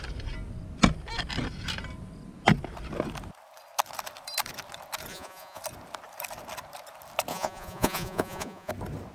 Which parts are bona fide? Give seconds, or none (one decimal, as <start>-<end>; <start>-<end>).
0.0-5.1; 5.6-7.3; 8.7-9.1